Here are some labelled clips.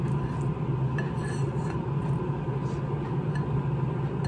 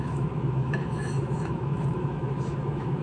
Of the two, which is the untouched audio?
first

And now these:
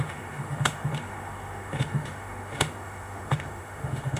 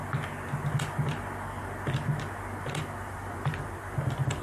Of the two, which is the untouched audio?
second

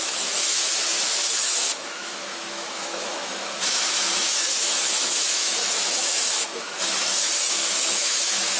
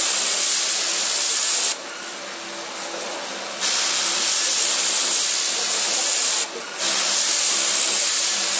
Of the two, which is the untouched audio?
second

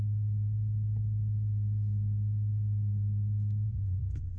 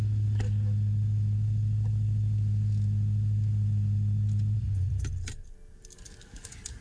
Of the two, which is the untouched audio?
second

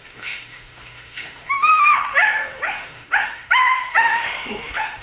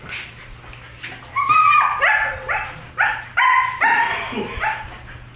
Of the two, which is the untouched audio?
second